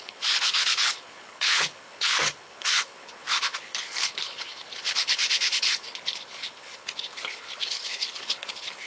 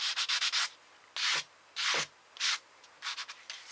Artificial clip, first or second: first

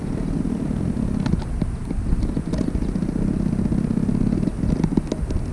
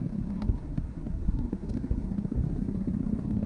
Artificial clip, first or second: second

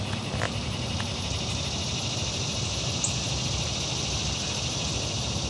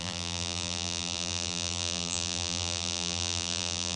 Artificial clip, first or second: second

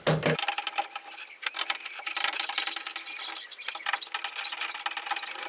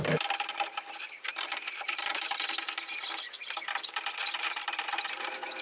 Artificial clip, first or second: second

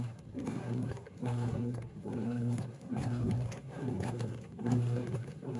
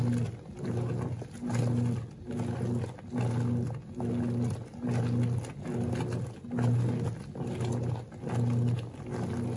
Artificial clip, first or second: first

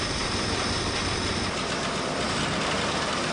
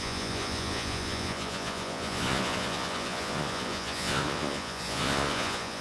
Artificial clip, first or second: second